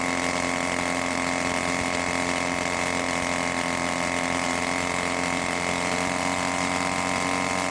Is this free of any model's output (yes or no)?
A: yes